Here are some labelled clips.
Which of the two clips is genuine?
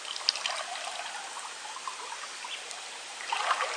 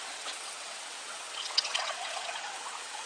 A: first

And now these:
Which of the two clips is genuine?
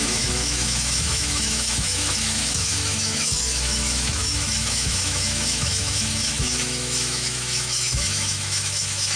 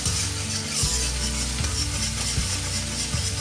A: second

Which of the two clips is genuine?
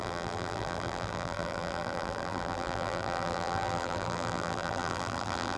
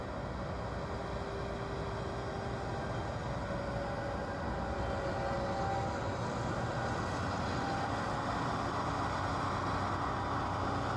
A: second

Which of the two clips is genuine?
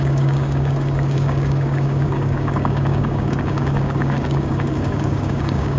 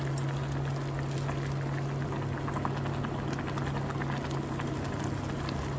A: second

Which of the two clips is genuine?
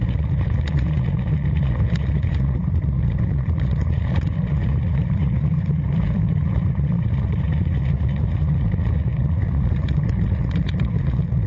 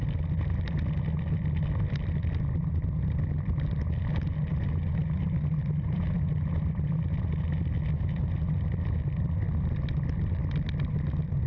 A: second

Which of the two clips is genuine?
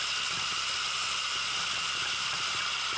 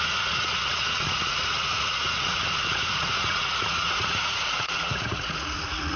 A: first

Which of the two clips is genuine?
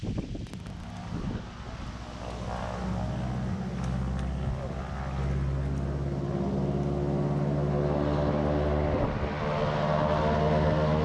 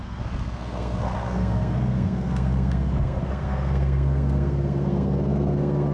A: first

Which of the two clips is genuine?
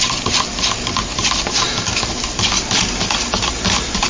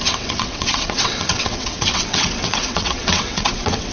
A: first